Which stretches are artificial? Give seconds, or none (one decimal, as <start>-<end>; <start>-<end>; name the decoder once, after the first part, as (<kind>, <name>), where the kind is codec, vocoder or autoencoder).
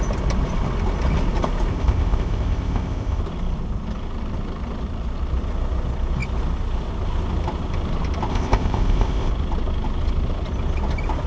1.7-3.2 (codec, ZipCodec); 8.3-9.3